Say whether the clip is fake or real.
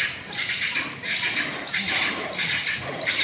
real